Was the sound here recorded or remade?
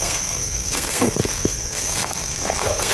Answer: remade